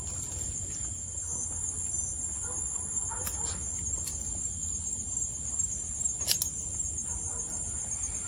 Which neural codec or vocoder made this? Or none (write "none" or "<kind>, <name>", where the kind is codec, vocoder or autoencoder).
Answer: none